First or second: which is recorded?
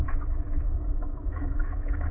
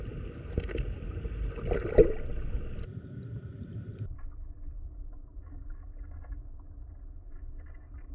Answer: second